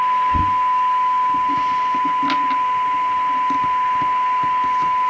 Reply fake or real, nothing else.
real